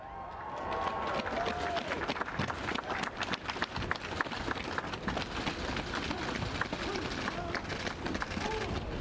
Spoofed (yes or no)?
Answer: no